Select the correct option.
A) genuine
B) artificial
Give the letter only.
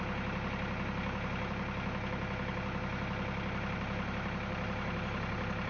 A